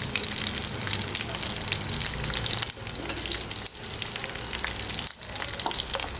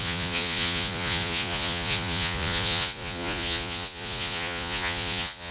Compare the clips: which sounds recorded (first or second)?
first